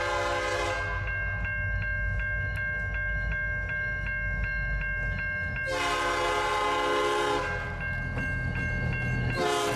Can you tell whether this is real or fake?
real